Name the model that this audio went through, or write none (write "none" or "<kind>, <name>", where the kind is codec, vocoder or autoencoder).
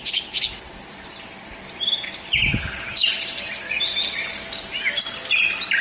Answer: none